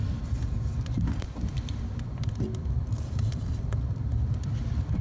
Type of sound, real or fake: fake